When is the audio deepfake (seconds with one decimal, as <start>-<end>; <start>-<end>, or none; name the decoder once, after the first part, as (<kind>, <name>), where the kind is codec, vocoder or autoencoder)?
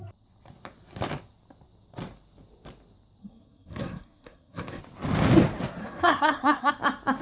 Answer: 3.2-4.8 (codec, SNAC); 5.8-6.7